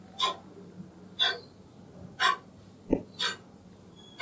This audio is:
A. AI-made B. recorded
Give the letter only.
B